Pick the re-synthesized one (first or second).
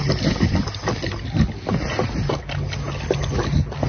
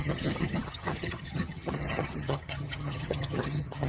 second